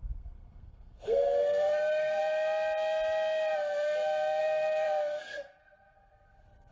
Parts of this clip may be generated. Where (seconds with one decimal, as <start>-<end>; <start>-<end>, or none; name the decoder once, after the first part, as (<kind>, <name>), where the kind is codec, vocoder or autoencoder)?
0.0-2.2 (codec, SNAC); 4.4-6.7